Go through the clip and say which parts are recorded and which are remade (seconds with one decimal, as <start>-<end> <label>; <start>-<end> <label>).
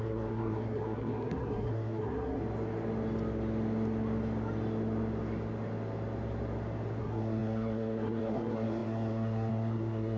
0.0-2.4 remade; 2.4-7.0 recorded; 7.0-10.2 remade